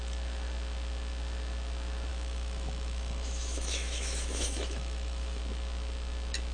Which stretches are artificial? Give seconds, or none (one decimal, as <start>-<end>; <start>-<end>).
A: 2.1-5.4